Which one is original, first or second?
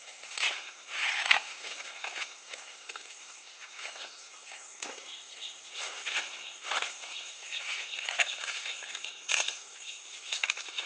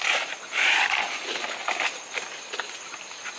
second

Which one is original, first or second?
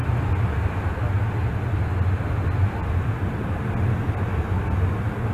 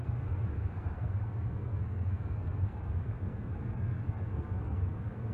first